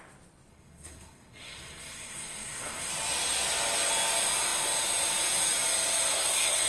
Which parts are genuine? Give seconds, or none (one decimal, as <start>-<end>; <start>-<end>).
0.0-0.5; 2.9-6.1